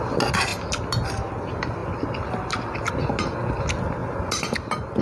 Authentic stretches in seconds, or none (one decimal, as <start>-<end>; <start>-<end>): 0.0-5.0